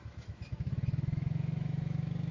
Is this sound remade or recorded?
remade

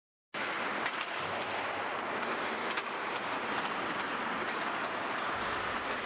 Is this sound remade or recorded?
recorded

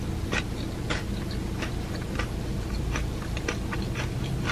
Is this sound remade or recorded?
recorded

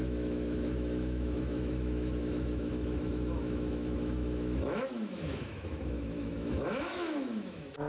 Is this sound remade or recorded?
remade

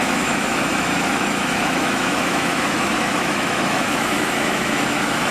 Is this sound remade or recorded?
remade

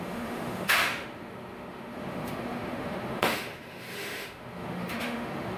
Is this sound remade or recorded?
remade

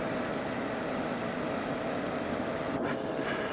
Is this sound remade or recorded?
recorded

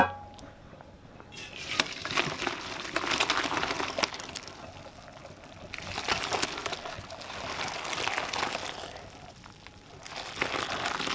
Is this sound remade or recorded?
recorded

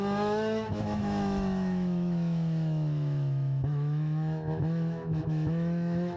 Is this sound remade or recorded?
remade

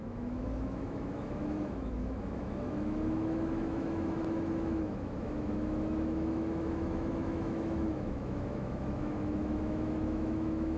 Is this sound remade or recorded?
remade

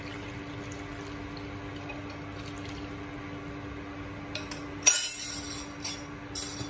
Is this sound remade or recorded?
recorded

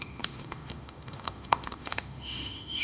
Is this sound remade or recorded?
remade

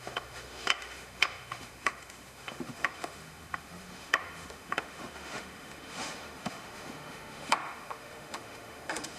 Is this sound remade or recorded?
remade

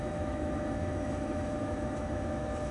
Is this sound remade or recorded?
remade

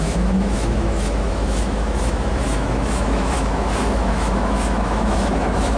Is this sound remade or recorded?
remade